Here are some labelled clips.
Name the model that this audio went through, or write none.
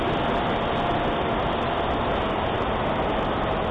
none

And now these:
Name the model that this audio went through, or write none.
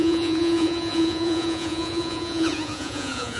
vocoder, Vocos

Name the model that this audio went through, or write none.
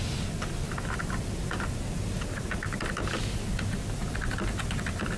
none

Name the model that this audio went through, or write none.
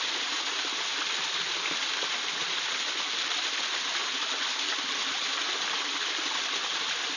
none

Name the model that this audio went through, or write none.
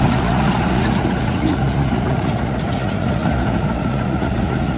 vocoder, Vocos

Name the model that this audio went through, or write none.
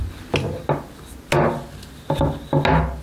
none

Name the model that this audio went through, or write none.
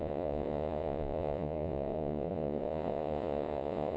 vocoder, Vocos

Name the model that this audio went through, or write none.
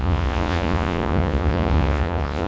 vocoder, Vocos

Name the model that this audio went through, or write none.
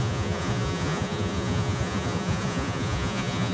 vocoder, Vocos